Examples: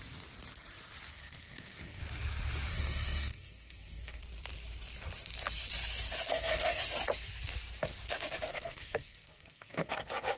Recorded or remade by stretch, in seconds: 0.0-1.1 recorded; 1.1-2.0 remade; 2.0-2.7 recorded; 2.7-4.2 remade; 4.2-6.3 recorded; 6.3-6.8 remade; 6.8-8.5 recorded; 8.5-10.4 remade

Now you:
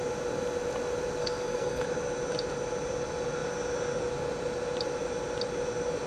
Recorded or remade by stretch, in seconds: 0.0-1.2 recorded; 1.2-1.8 remade; 1.8-6.1 recorded